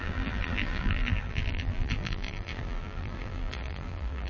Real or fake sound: fake